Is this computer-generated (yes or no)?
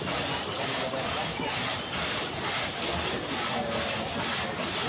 no